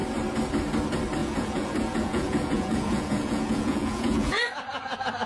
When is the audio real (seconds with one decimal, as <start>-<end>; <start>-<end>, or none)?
0.0-1.2; 4.4-5.3